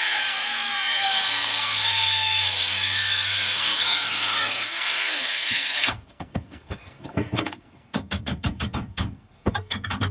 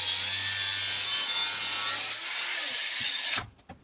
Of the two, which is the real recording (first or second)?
second